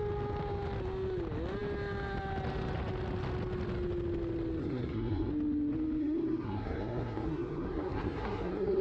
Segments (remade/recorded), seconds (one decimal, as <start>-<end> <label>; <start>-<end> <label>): 0.0-4.6 recorded; 4.6-5.3 remade; 5.3-6.0 recorded; 6.0-8.8 remade

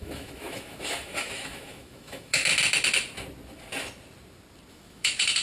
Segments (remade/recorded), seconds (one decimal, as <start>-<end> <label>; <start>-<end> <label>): 0.0-2.4 remade; 2.4-4.7 recorded; 4.7-5.4 remade

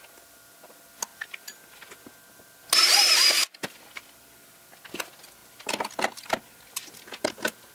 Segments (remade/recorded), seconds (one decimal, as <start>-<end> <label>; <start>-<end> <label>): 0.0-7.7 recorded

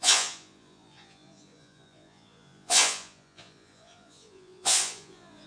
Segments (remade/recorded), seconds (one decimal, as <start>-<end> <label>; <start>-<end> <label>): 0.0-5.5 remade

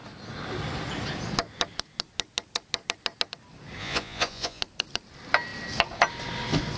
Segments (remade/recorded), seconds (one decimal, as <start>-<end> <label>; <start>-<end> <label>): 0.0-3.8 recorded; 3.8-4.6 remade; 4.6-6.8 recorded